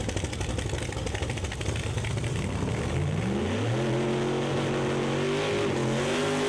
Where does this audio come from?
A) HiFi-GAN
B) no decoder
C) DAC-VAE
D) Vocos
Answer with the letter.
B